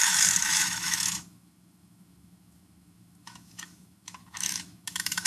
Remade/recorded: remade